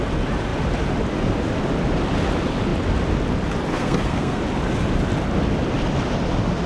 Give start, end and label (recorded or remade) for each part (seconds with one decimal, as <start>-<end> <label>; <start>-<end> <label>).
0.0-3.7 recorded; 3.7-4.4 remade; 4.4-6.7 recorded